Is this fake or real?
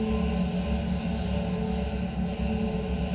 real